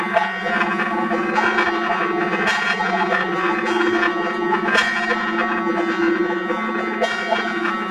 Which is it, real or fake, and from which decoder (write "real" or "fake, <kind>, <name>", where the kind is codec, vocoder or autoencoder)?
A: fake, vocoder, Vocos